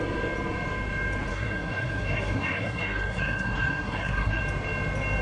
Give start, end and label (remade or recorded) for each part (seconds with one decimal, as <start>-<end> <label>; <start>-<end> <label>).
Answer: 0.0-1.3 recorded; 1.3-4.4 remade; 4.4-5.2 recorded

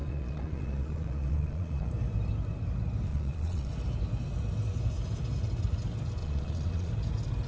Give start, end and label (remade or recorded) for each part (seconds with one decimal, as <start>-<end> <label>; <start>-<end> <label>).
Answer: 0.0-1.9 remade; 1.9-3.1 recorded; 3.1-3.7 remade; 3.7-6.2 recorded; 6.2-6.9 remade; 6.9-7.5 recorded

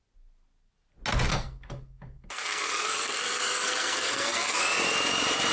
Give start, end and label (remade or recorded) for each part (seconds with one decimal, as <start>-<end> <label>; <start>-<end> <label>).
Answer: 0.0-1.3 recorded; 1.3-4.6 remade; 4.6-5.5 recorded

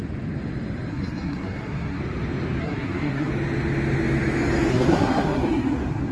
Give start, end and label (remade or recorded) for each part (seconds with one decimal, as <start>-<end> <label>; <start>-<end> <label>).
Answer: 0.0-0.9 recorded; 0.9-2.0 remade; 2.0-2.6 recorded; 2.6-3.3 remade; 3.3-4.7 recorded; 4.7-6.1 remade

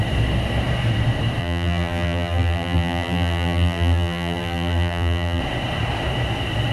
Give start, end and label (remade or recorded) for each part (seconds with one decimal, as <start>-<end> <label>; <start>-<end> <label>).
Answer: 0.0-1.4 recorded; 1.4-5.4 remade; 5.4-6.7 recorded

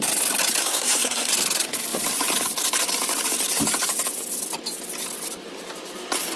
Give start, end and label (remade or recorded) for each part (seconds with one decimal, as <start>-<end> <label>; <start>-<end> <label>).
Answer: 0.0-0.6 recorded; 0.6-1.3 remade; 1.3-6.4 recorded